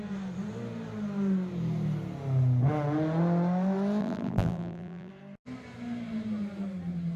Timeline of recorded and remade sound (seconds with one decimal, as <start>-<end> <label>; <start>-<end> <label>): 0.0-4.0 recorded; 4.0-5.1 remade; 5.1-7.2 recorded